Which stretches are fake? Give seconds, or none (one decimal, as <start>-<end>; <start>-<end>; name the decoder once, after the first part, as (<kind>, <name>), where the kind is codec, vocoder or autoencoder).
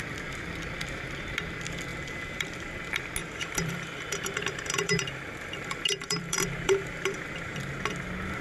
1.9-2.8 (vocoder, BigVGAN v2); 3.2-7.6